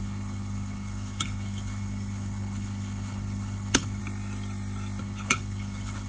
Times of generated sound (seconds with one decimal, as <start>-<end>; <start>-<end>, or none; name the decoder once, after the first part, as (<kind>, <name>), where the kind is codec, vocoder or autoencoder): 0.0-4.0 (codec, HILCodec); 5.0-6.1